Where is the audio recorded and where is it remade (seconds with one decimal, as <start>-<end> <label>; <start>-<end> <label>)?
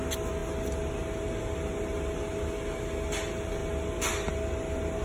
0.0-5.0 recorded